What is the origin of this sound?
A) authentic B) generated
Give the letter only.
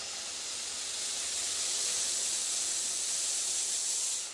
A